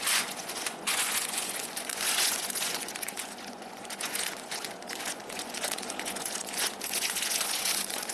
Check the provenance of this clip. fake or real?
fake